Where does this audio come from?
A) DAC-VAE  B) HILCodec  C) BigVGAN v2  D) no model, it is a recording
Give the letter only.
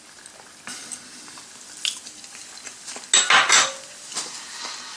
D